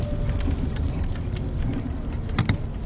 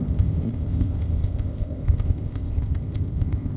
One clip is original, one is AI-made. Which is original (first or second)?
first